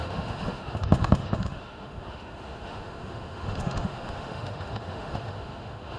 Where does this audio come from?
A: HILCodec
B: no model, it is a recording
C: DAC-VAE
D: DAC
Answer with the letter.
C